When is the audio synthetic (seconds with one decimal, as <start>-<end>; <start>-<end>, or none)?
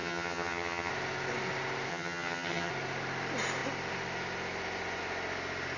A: 0.0-0.9; 1.9-2.7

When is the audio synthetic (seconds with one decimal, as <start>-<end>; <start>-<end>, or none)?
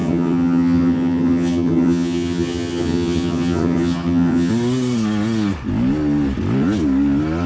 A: 0.0-4.5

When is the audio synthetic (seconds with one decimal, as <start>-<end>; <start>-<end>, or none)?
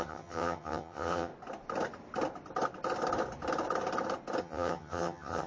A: 0.0-1.3; 4.4-5.5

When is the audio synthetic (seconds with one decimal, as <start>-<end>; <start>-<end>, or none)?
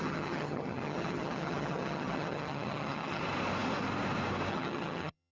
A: 0.0-3.2; 4.5-5.3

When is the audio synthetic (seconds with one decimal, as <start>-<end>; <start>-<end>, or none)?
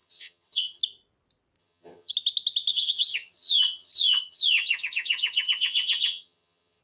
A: 0.0-0.8; 1.6-2.1; 2.7-6.8